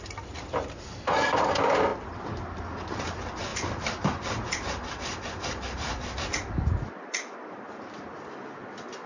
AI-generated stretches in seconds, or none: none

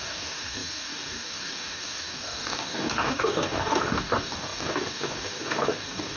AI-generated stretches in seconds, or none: 0.0-6.2 (codec, DAC)

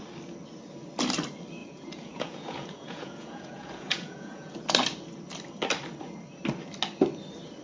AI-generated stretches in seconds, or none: 1.6-4.5 (vocoder, Vocos)

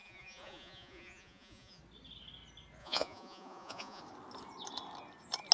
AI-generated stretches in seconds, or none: 0.0-1.8 (vocoder, Vocos); 2.8-4.0

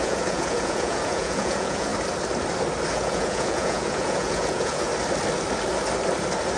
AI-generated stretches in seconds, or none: 0.0-1.9 (vocoder, Vocos); 2.9-4.9

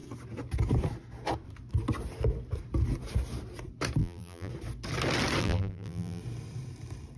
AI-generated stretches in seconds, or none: 4.0-4.5 (vocoder, BigVGAN v2); 5.4-6.2

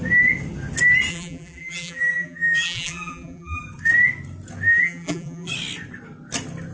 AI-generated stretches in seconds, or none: 1.1-3.6 (vocoder, BigVGAN v2); 4.7-5.5

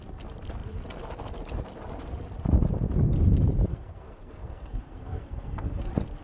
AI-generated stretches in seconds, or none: 3.7-5.8 (codec, SNAC)